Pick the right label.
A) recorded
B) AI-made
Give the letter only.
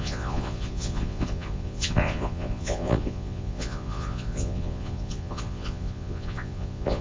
B